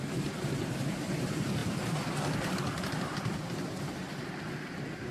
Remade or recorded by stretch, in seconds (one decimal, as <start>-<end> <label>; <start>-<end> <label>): 0.0-5.1 recorded